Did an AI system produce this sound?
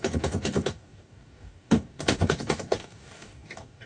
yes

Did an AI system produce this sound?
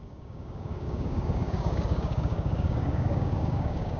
yes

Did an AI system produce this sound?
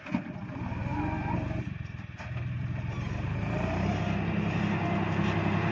no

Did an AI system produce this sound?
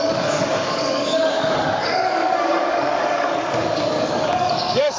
yes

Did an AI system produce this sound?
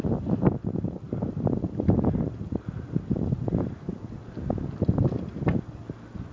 no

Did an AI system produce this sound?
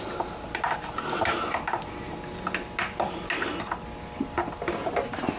no